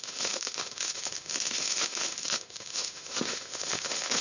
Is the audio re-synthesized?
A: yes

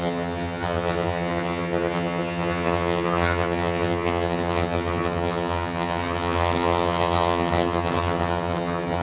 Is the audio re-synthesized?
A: yes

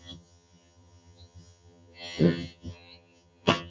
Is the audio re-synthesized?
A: yes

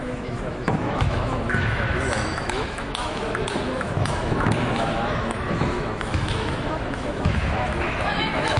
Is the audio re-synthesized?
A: yes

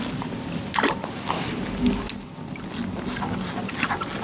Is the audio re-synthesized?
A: no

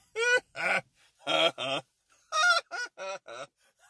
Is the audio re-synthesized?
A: no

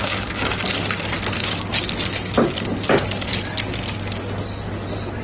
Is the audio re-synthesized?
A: no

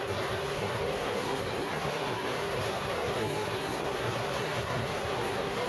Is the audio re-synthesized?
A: yes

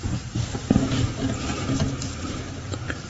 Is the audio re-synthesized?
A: no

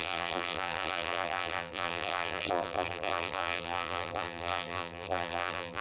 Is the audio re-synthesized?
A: yes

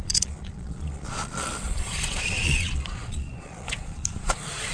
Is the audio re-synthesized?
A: yes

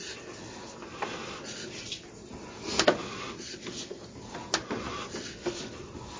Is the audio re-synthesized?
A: no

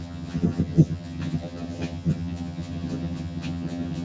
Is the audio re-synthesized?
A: yes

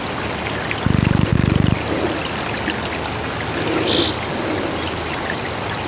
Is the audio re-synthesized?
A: no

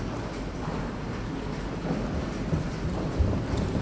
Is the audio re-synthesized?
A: no